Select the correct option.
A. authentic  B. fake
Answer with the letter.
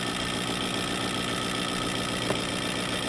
A